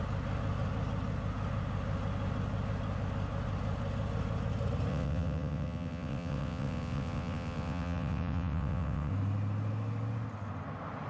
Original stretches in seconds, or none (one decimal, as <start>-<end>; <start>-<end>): 0.0-4.9; 9.1-11.1